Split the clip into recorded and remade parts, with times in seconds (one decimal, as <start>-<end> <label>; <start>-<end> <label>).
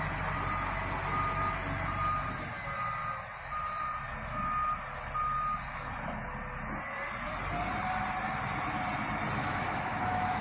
0.0-9.4 recorded; 9.4-10.4 remade